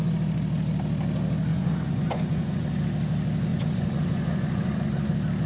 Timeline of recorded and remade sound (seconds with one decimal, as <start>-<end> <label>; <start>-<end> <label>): 0.0-1.5 recorded; 1.5-2.8 remade; 2.8-3.5 recorded; 3.5-5.1 remade; 5.1-5.5 recorded